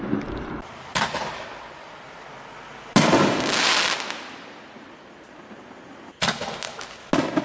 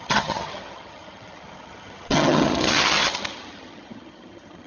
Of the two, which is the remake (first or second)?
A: second